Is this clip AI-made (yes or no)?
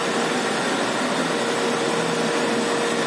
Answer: no